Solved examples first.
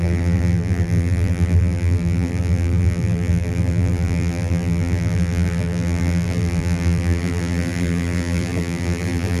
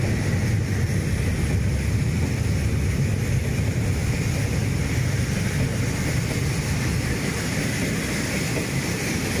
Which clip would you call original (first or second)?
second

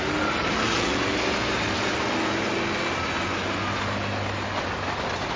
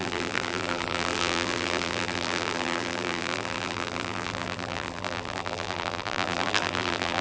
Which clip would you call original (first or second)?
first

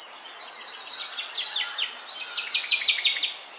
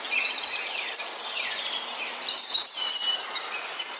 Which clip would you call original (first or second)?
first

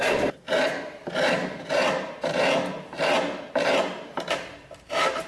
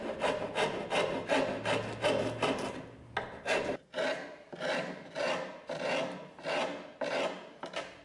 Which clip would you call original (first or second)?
second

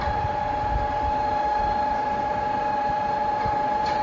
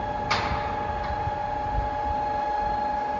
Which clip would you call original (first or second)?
second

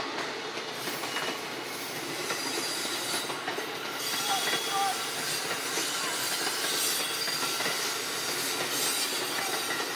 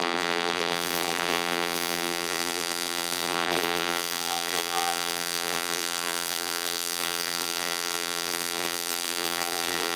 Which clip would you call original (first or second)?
first